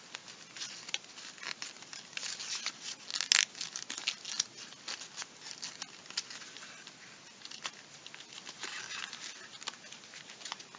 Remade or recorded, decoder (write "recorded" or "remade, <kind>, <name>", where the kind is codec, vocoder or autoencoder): recorded